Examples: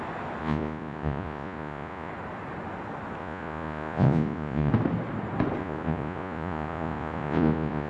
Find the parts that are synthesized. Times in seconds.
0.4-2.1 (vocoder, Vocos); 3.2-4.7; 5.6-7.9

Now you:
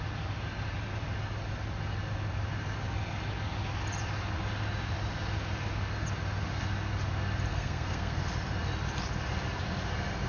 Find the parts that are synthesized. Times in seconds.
7.5-8.2 (codec, SNAC)

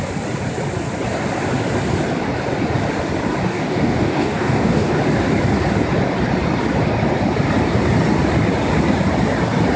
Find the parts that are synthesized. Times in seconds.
3.5-5.0 (codec, DAC)

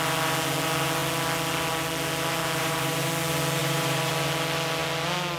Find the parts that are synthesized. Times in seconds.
2.4-3.1 (vocoder, BigVGAN v2); 3.6-4.1

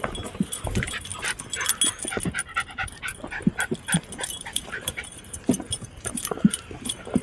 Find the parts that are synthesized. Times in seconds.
0.0-1.1 (vocoder, BigVGAN v2); 2.7-3.1; 4.2-7.2